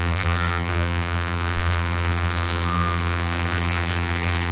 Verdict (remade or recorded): remade